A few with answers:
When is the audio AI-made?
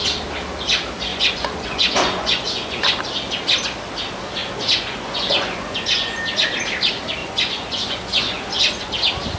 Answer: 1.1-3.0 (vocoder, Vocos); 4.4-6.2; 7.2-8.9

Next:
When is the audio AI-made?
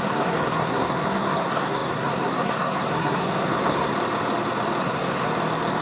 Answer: 0.0-3.9 (codec, SNAC); 4.8-5.3